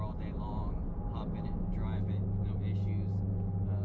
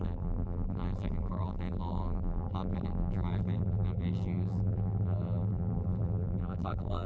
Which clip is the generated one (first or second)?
second